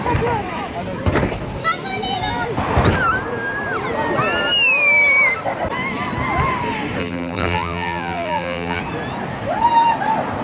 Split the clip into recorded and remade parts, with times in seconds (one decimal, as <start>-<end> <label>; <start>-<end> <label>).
0.0-7.0 recorded; 7.0-8.8 remade; 8.8-10.4 recorded